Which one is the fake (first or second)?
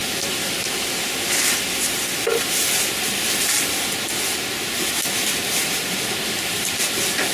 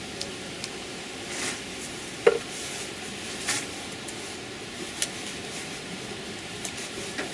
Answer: second